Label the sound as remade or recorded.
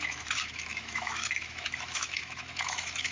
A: remade